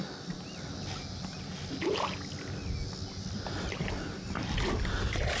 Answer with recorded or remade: recorded